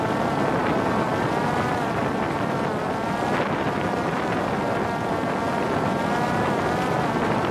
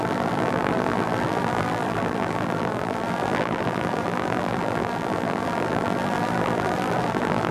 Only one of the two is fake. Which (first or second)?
second